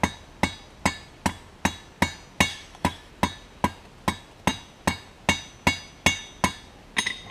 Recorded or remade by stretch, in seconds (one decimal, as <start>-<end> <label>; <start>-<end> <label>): 0.0-2.5 recorded; 2.5-3.1 remade; 3.1-7.3 recorded